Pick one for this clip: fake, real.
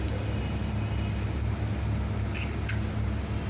real